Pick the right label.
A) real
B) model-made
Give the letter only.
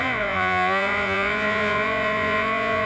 B